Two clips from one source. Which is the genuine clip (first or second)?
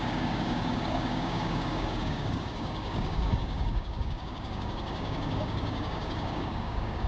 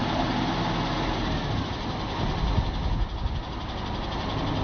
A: second